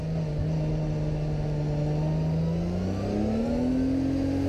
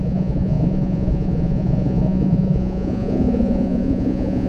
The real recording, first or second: first